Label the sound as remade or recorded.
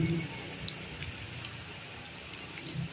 recorded